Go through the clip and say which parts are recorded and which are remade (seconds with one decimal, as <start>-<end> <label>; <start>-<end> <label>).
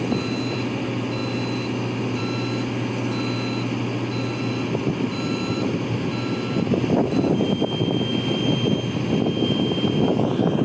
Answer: 0.0-10.6 recorded